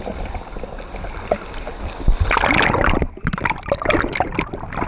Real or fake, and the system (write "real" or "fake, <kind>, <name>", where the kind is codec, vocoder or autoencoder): real